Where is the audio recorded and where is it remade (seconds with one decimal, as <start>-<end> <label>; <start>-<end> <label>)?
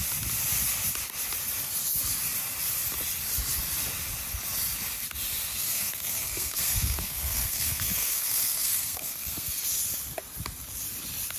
0.0-5.5 recorded; 5.5-9.6 remade; 9.6-11.4 recorded